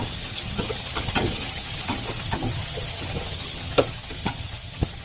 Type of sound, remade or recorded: remade